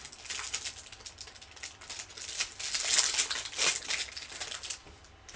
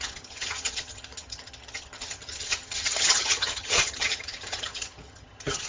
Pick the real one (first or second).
first